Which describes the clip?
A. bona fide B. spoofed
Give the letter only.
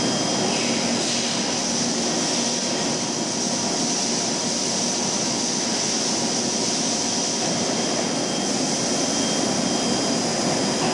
A